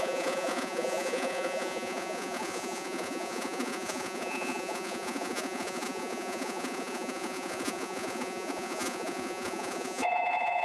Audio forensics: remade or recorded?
remade